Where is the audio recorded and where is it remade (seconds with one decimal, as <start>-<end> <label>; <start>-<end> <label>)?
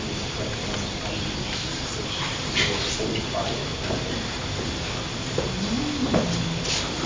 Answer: 0.0-3.7 remade; 3.7-6.4 recorded; 6.4-7.1 remade